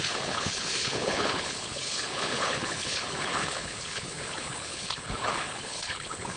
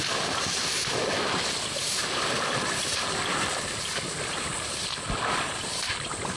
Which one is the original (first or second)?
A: second